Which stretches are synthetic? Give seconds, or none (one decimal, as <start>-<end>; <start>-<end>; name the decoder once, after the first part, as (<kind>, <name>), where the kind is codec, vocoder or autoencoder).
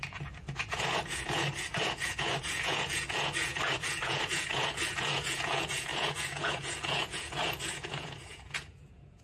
0.0-9.2 (vocoder, Vocos)